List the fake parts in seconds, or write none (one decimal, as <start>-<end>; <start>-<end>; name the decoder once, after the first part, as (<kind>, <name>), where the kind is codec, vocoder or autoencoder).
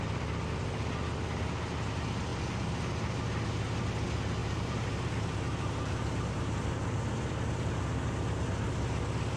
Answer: 4.4-6.4 (vocoder, BigVGAN v2)